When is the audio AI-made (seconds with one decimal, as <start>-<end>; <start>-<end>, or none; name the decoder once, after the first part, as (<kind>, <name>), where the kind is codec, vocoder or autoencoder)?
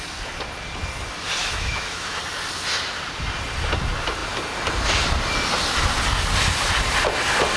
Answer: 1.4-2.2 (autoencoder, DAC-VAE)